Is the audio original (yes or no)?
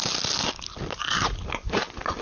yes